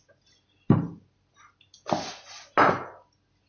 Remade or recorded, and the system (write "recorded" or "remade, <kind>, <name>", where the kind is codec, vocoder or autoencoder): recorded